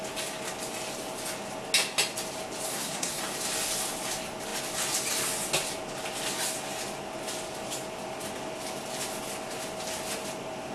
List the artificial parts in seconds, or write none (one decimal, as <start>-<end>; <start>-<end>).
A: 2.7-3.2